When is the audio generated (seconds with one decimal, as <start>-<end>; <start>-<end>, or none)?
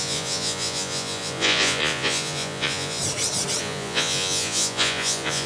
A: 0.0-3.0; 3.6-5.5